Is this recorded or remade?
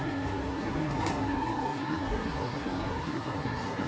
remade